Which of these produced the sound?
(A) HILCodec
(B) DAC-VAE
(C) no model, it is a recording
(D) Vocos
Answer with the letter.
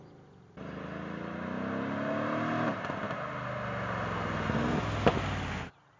C